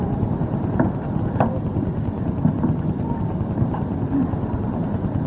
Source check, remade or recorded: recorded